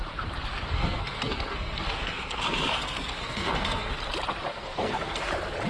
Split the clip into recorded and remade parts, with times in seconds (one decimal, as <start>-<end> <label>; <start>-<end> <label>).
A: 0.0-0.7 recorded; 0.7-3.9 remade; 3.9-4.5 recorded; 4.5-5.3 remade; 5.3-5.7 recorded